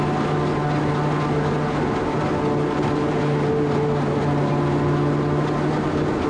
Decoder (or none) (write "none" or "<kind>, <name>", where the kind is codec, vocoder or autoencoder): none